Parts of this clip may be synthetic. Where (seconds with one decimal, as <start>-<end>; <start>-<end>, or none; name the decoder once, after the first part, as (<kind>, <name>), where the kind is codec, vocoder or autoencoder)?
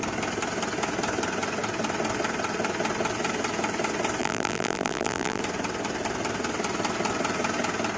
4.2-5.4 (vocoder, BigVGAN v2)